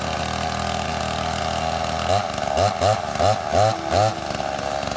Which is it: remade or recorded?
recorded